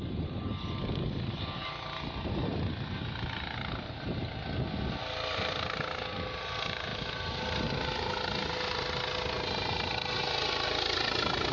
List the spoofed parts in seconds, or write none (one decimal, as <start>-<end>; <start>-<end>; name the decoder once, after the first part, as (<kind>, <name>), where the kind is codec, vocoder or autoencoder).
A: none